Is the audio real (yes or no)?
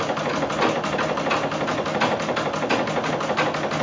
yes